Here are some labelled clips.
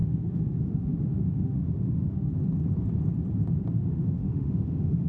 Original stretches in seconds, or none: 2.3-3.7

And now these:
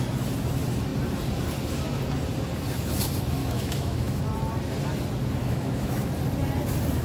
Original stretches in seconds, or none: 0.0-3.4; 4.2-5.4; 6.1-7.0

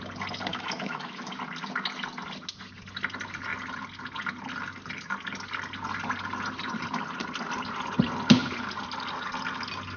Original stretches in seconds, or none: 0.0-0.5; 1.3-10.0

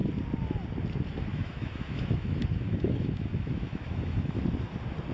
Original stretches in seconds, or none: 0.0-1.3; 4.4-5.1

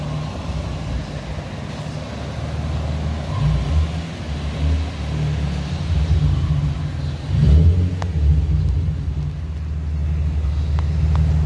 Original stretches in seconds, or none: 0.0-11.5